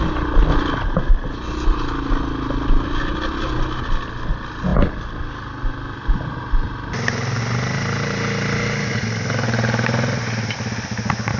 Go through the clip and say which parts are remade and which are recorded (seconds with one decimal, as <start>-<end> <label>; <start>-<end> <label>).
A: 0.0-11.4 recorded